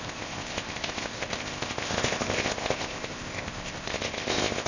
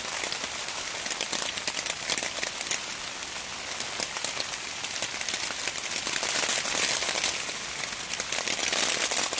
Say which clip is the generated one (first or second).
first